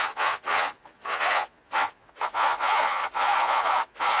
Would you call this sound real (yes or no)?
no